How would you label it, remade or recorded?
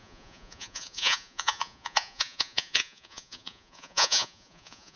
remade